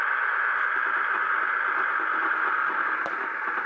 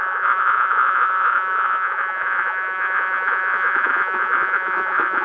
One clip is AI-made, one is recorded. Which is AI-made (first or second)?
second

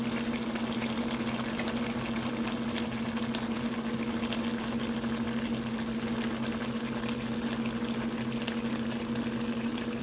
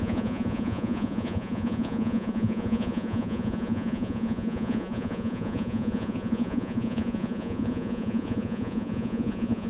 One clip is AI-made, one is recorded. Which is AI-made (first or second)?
second